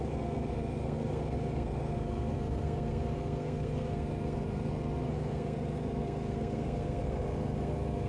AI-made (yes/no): yes